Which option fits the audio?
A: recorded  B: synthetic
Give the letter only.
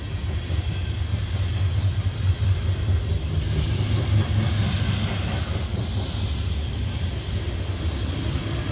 A